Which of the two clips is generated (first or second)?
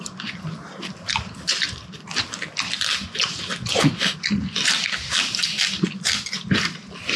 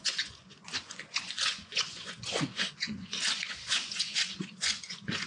second